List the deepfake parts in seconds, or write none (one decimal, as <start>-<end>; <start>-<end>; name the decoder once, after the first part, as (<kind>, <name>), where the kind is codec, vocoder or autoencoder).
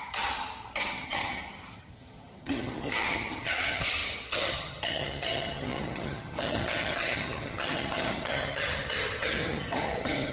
0.0-10.3 (vocoder, HiFi-GAN)